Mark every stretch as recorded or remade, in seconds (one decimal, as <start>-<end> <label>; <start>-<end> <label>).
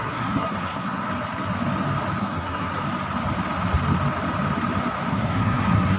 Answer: 0.0-1.1 remade; 1.1-2.2 recorded; 2.2-2.7 remade; 2.7-5.1 recorded; 5.1-6.0 remade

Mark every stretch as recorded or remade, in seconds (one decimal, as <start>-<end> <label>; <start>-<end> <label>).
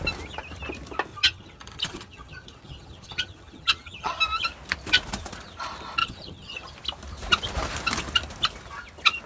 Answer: 0.0-1.1 recorded; 1.1-4.2 remade; 4.2-6.0 recorded; 6.0-6.7 remade; 6.7-9.3 recorded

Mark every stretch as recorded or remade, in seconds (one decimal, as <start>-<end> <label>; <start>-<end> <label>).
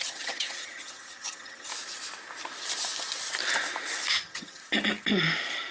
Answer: 0.0-1.7 remade; 1.7-4.1 recorded; 4.1-4.6 remade; 4.6-5.7 recorded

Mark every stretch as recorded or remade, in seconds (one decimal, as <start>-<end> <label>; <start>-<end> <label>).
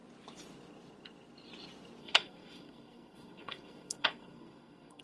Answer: 0.0-2.0 recorded; 2.0-5.0 remade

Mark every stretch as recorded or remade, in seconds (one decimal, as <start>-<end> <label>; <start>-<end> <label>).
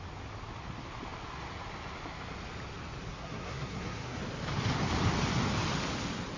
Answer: 0.0-3.1 recorded; 3.1-4.2 remade; 4.2-6.4 recorded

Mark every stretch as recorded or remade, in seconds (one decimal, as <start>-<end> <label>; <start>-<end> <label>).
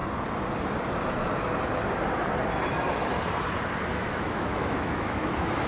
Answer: 0.0-3.9 recorded; 3.9-5.7 remade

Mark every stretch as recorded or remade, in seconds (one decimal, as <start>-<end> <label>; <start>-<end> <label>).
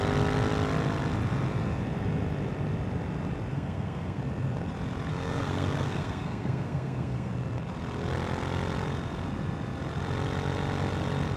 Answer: 0.0-3.5 recorded; 3.5-4.2 remade; 4.2-5.1 recorded; 5.1-7.3 remade; 7.3-11.4 recorded